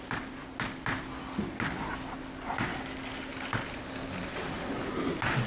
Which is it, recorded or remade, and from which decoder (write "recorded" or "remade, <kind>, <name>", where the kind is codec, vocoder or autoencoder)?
recorded